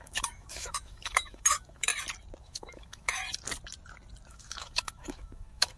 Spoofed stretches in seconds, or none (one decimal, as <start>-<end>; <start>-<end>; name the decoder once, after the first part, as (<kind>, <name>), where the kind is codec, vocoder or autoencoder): 0.0-1.9 (autoencoder, DAC-VAE); 2.4-3.2; 4.3-5.8